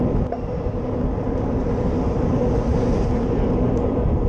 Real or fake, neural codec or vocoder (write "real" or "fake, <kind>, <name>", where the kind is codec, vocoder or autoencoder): real